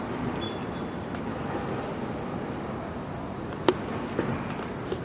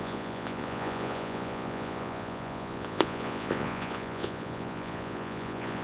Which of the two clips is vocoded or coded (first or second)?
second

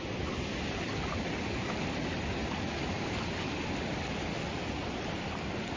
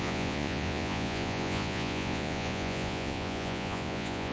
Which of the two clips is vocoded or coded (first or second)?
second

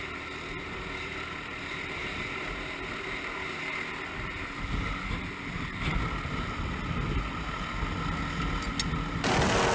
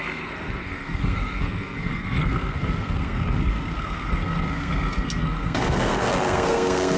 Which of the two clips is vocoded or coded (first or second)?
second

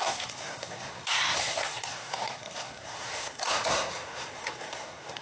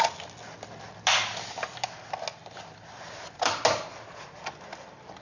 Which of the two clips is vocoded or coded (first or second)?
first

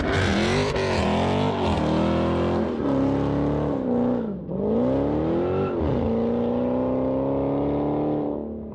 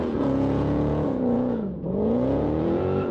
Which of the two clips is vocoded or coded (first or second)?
second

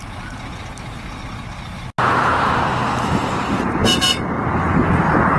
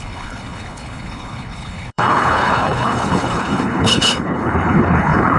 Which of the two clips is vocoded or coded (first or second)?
second